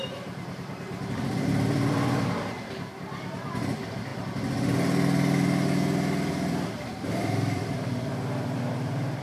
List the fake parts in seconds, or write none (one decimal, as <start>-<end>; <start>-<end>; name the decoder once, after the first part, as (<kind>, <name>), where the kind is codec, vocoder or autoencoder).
0.0-4.1 (vocoder, BigVGAN v2); 6.3-9.2